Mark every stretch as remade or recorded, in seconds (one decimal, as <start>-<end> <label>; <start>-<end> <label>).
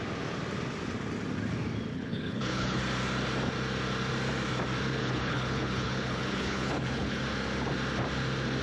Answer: 0.0-1.9 recorded; 1.9-2.8 remade; 2.8-5.0 recorded; 5.0-7.2 remade; 7.2-8.6 recorded